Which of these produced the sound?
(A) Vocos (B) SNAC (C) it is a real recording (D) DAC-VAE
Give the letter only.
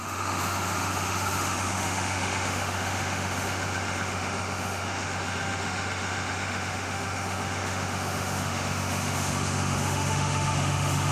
D